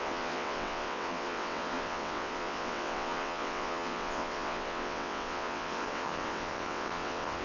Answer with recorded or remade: remade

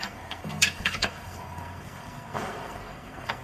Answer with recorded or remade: remade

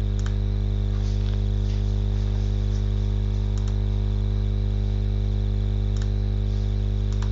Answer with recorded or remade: recorded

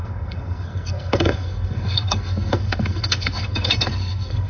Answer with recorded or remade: remade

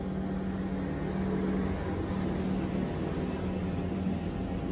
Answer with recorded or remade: recorded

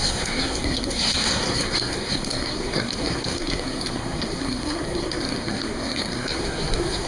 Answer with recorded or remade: remade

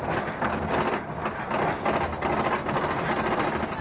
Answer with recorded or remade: recorded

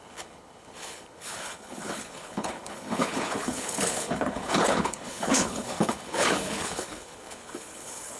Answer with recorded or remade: remade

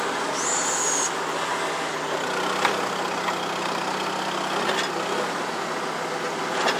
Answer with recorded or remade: recorded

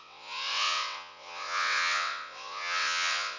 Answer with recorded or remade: remade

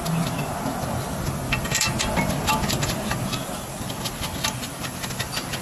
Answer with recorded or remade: recorded